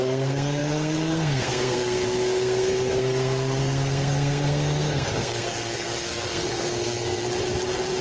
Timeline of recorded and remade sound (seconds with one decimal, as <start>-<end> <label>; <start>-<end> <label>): 0.0-7.2 remade; 7.2-8.0 recorded